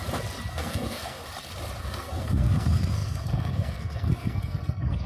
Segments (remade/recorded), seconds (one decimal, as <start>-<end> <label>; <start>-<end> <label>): 0.0-0.5 recorded; 0.5-1.2 remade; 1.2-1.8 recorded; 1.8-5.1 remade